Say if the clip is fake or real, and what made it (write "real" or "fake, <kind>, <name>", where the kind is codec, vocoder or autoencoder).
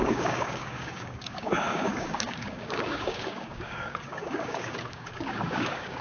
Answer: fake, codec, DAC